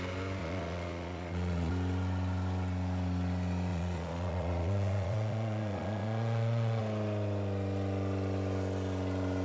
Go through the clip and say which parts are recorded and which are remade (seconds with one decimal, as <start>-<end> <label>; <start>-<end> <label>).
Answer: 0.0-0.4 recorded; 0.4-1.7 remade; 1.7-3.7 recorded; 3.7-6.8 remade; 6.8-9.4 recorded